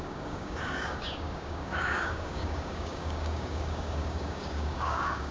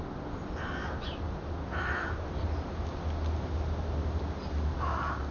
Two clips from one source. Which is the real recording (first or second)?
second